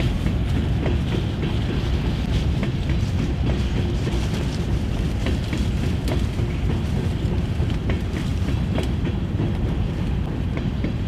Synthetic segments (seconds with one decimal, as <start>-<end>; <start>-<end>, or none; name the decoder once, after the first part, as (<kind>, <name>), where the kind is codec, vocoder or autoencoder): 8.3-9.8 (vocoder, BigVGAN v2)